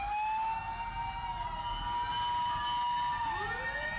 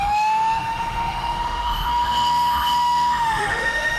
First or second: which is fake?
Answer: second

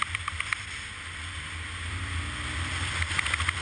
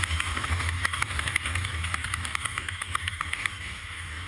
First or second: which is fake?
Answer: second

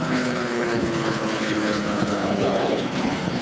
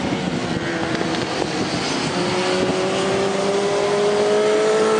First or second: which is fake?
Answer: first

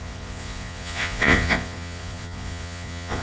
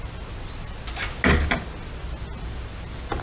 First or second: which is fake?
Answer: first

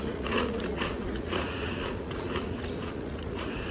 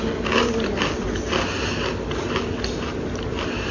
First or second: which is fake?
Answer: first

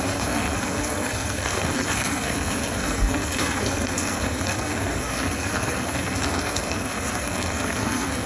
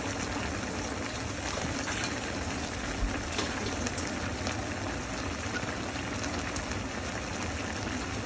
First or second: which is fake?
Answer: first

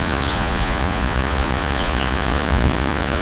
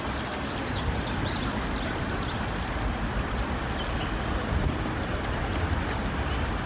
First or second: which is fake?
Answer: first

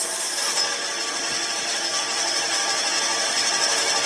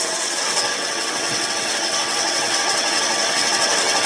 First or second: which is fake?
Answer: second